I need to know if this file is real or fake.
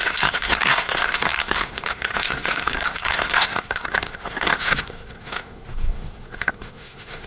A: fake